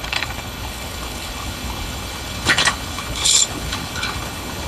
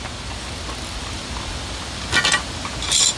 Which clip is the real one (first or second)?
second